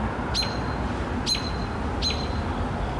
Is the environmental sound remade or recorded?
recorded